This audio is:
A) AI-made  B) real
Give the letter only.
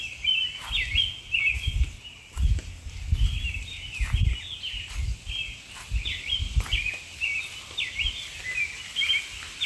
B